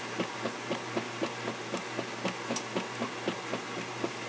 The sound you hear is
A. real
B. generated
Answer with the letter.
A